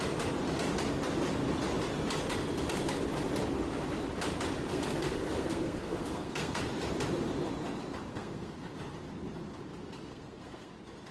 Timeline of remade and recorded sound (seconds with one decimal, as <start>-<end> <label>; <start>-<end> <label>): 0.0-4.7 recorded; 4.7-6.6 remade; 6.6-8.1 recorded; 8.1-8.7 remade; 8.7-10.1 recorded; 10.1-10.7 remade; 10.7-11.1 recorded